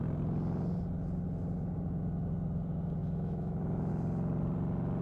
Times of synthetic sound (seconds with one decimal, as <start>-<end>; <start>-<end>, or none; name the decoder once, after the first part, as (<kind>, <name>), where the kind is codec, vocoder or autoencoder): 3.0-3.9 (autoencoder, DAC-VAE)